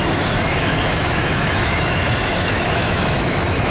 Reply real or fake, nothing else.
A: fake